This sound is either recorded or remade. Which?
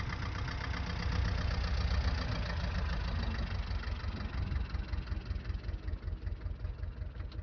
recorded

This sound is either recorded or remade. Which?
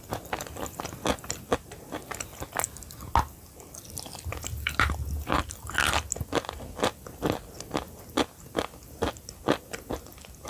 recorded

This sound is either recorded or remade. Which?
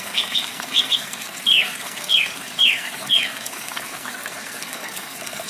remade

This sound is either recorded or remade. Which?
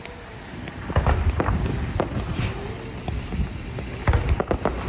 recorded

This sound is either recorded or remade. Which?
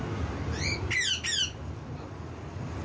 recorded